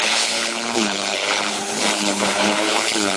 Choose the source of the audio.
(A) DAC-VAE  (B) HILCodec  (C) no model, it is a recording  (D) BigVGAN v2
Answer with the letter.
B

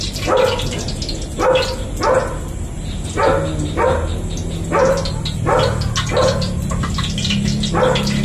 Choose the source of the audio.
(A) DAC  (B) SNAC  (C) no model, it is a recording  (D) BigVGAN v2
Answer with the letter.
C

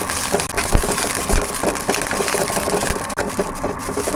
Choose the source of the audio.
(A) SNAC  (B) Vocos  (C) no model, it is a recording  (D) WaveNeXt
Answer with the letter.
C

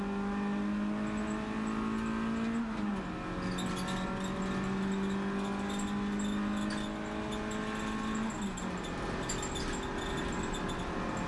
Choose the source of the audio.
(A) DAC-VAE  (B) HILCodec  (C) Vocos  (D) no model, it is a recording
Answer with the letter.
D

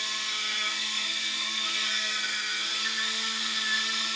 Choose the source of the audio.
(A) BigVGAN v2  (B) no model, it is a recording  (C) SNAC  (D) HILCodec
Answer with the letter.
C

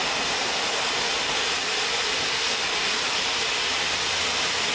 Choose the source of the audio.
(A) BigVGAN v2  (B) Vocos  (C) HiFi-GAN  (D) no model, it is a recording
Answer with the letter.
D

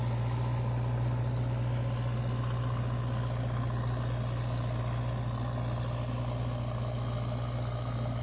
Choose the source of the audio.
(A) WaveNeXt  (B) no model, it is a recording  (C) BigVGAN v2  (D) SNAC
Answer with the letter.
B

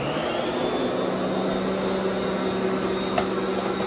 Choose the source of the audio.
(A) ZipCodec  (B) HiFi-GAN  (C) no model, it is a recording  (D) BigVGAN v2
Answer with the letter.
C